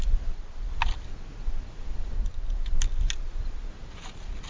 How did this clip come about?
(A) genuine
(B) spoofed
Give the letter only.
A